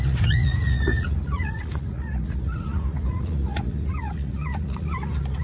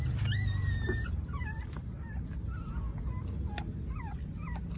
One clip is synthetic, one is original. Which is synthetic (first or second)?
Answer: first